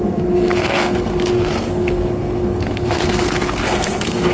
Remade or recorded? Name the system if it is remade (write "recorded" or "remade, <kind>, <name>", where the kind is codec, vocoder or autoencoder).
remade, codec, SNAC